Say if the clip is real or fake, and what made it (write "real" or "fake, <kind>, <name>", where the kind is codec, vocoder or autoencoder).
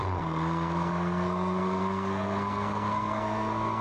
fake, codec, SNAC